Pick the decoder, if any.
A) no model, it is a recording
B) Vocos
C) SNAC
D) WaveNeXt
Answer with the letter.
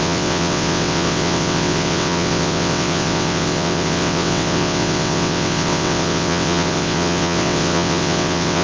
D